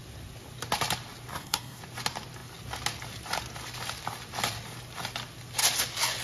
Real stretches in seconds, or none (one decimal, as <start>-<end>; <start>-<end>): 0.0-1.3; 1.8-6.2

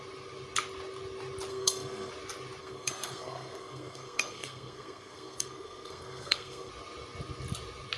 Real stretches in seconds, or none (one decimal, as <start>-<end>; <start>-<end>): 0.0-1.5; 2.1-2.6; 6.7-8.0

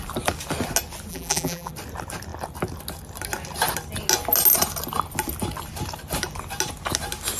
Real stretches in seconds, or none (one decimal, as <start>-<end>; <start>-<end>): 0.0-1.1; 1.7-7.4